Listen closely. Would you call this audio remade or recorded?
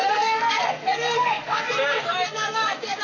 remade